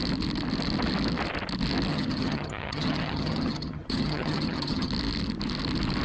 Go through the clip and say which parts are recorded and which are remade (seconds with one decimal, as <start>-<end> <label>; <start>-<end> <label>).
0.0-1.9 recorded; 1.9-4.9 remade; 4.9-6.0 recorded